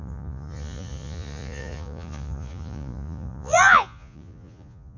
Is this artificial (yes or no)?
yes